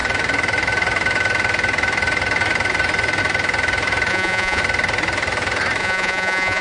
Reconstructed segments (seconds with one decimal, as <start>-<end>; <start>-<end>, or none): 4.1-4.6; 5.8-6.6